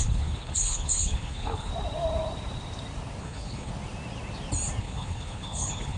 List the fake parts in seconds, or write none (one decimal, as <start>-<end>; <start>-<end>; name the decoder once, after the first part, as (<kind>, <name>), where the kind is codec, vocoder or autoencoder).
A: 0.0-1.7 (codec, HILCodec); 3.2-3.7; 4.8-6.0